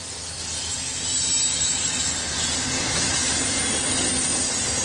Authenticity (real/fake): real